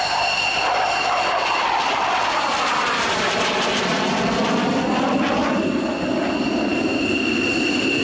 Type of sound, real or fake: real